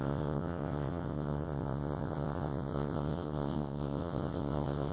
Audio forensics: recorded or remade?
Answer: remade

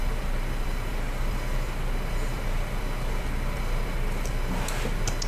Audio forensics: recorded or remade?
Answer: remade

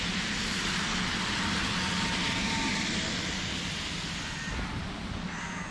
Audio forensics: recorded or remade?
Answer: recorded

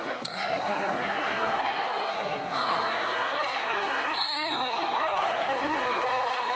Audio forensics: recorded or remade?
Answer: remade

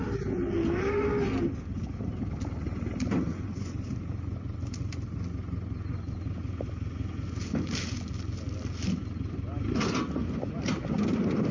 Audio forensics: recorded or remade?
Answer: recorded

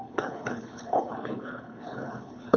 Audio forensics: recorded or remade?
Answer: remade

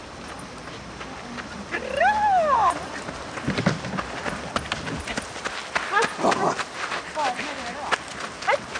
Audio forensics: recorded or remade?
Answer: recorded